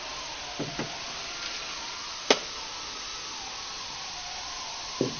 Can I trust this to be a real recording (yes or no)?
yes